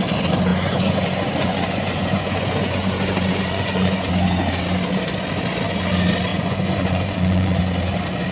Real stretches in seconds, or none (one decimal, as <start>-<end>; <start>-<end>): 0.0-0.5; 4.1-6.3; 7.6-8.3